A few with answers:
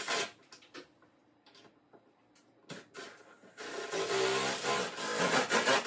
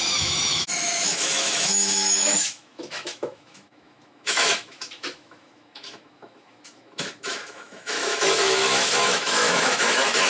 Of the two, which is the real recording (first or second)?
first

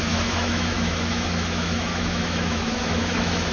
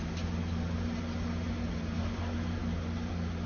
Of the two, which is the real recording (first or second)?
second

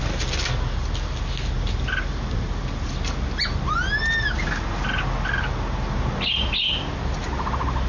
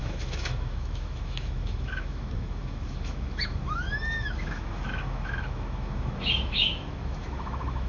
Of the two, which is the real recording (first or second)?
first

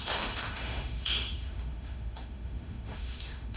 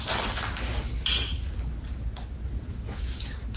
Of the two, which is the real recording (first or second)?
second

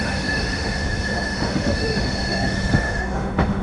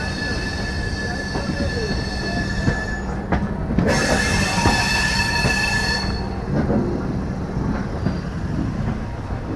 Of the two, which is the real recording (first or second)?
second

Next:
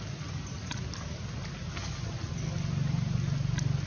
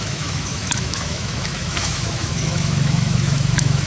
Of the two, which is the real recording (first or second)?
first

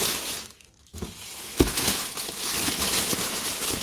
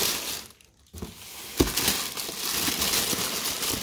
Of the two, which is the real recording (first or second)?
second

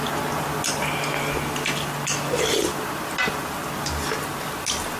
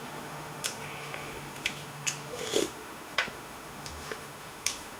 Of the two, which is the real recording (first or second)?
first